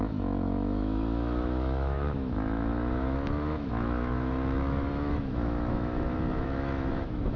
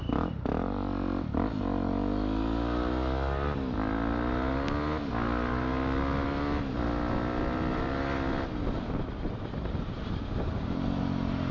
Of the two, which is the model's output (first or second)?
first